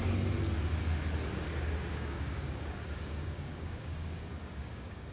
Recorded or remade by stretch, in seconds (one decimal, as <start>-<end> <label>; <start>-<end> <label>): 0.0-1.8 recorded; 1.8-5.1 remade